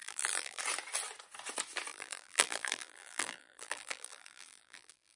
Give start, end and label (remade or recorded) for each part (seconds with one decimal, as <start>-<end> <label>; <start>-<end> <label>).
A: 0.0-0.6 remade; 0.6-1.9 recorded; 1.9-5.2 remade